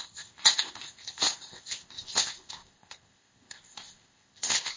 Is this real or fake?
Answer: fake